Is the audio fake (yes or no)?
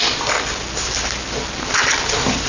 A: no